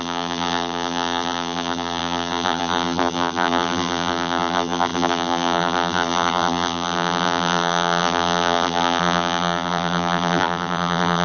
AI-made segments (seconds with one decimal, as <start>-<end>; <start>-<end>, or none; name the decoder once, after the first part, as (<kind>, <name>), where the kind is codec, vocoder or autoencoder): 0.0-11.2 (vocoder, BigVGAN v2)